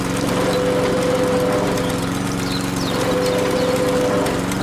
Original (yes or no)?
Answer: yes